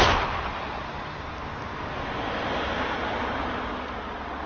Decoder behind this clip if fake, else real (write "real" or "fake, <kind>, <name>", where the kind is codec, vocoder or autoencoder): real